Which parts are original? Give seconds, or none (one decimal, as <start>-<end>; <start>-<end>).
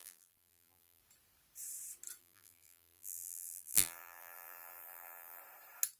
1.0-2.2; 5.4-6.0